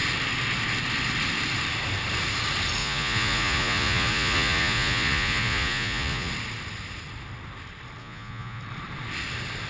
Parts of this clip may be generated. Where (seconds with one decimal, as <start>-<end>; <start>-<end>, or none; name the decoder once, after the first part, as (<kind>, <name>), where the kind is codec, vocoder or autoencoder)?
2.8-6.3 (vocoder, Vocos); 8.0-8.6